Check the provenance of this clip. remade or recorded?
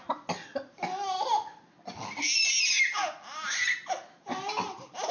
recorded